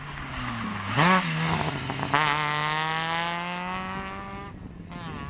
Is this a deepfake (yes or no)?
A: no